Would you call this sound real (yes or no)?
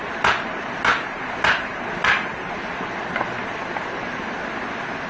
yes